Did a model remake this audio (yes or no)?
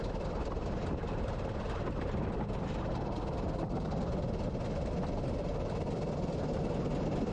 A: no